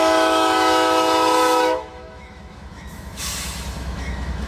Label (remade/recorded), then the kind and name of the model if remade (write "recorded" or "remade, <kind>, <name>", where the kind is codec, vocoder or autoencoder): remade, autoencoder, DAC-VAE